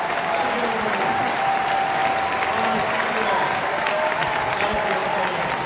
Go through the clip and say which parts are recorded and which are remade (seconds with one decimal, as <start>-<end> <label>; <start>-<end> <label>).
0.0-5.7 recorded